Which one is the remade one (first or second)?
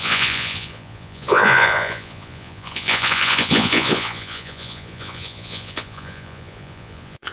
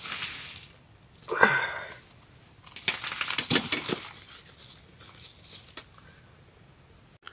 first